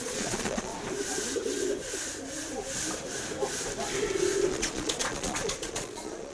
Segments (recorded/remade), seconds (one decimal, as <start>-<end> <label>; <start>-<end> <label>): 0.0-0.7 remade; 0.7-4.5 recorded; 4.5-6.3 remade